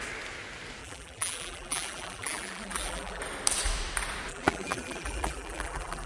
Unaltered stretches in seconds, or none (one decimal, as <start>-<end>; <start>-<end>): 0.0-0.8; 3.2-4.3